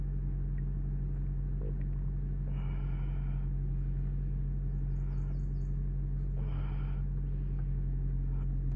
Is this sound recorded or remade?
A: recorded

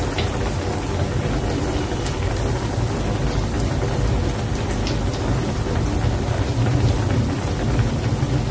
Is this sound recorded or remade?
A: recorded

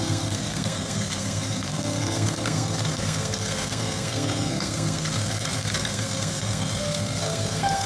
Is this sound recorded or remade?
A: remade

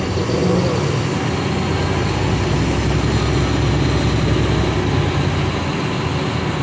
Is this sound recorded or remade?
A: recorded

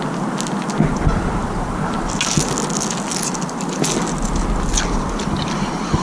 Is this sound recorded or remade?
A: recorded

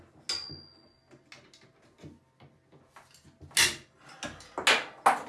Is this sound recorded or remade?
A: recorded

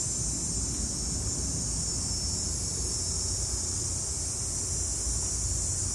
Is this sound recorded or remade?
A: recorded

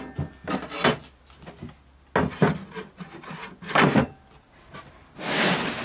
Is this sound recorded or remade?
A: recorded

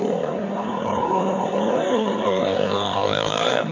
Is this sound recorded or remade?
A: remade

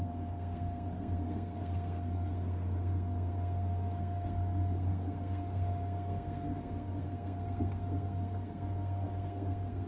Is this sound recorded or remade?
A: remade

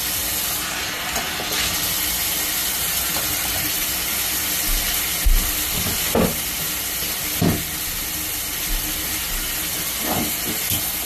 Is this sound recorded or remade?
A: recorded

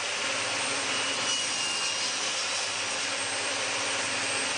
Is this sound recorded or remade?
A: recorded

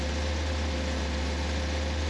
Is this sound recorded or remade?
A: recorded